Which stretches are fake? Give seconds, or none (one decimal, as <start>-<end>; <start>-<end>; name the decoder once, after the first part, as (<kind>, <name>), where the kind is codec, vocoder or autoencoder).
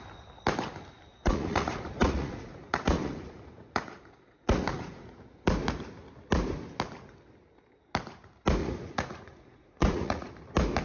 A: 1.1-5.2 (vocoder, Vocos); 8.6-10.3